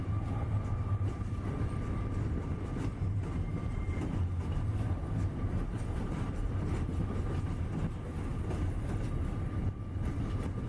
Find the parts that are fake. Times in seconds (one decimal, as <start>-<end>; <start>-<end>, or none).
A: 5.0-7.0